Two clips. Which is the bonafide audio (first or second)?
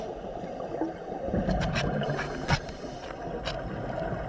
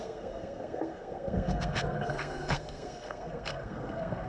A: first